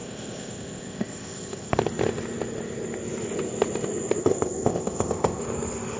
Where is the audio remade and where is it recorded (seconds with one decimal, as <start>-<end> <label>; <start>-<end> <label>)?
0.0-1.7 remade; 1.7-4.2 recorded; 4.2-5.4 remade; 5.4-6.0 recorded